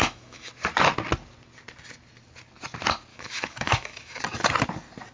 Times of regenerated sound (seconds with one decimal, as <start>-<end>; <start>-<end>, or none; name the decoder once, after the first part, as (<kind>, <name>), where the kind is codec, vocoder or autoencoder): 0.0-0.5 (autoencoder, DAC-VAE); 3.1-4.2